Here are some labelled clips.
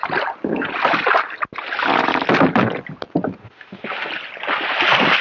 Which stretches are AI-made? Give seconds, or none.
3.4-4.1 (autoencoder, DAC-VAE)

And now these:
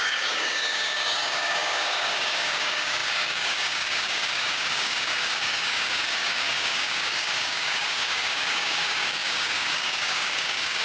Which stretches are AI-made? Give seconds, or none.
0.0-10.8 (codec, DAC)

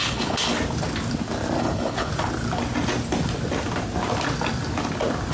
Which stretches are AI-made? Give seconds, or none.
0.0-0.5 (codec, HILCodec); 1.6-2.1